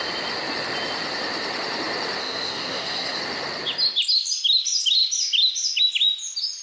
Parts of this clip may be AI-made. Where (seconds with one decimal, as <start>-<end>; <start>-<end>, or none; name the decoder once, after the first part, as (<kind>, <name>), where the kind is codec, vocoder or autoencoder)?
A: 2.2-3.2 (codec, SNAC)